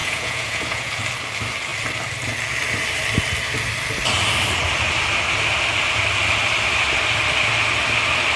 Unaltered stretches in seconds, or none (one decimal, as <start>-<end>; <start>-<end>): 1.0-8.4